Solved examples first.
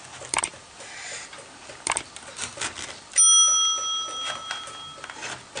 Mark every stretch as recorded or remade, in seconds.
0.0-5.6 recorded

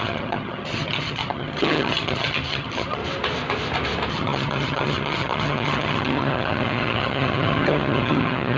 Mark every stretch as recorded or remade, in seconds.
0.0-3.0 remade; 3.0-4.1 recorded; 4.1-8.6 remade

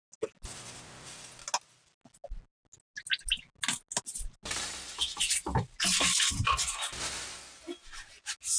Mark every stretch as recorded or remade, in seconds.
0.0-8.6 recorded

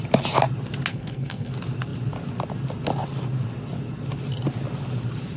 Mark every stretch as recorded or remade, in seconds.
0.0-0.9 recorded; 0.9-1.5 remade; 1.5-5.4 recorded